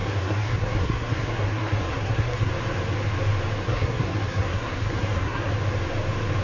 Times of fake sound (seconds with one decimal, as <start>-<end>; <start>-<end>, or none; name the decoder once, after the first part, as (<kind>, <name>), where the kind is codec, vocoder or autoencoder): 0.0-2.5 (codec, SNAC); 3.6-5.5